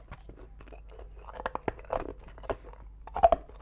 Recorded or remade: recorded